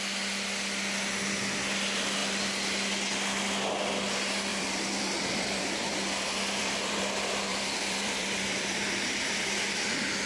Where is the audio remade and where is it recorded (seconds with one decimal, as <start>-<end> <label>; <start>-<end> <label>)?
0.0-4.5 recorded; 4.5-7.0 remade; 7.0-7.5 recorded; 7.5-9.6 remade; 9.6-10.3 recorded